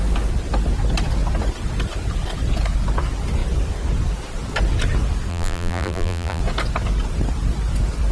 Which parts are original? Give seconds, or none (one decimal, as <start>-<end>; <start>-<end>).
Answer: 0.0-5.3; 6.4-8.1

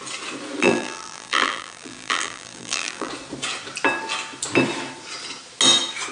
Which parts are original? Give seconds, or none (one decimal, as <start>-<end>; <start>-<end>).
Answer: 0.0-0.6; 3.1-6.1

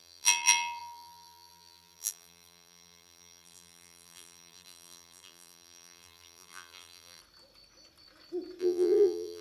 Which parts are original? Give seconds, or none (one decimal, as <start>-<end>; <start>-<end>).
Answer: 7.2-8.6

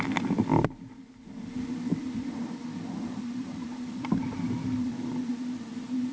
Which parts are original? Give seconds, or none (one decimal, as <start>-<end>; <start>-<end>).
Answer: 0.0-1.9; 5.3-6.1